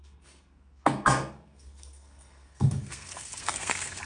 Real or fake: fake